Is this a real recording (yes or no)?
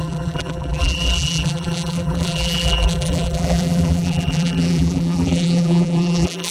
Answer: no